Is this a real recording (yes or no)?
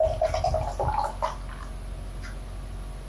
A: yes